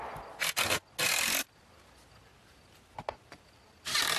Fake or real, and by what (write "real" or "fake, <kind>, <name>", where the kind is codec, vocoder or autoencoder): real